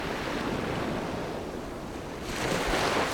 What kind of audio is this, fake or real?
real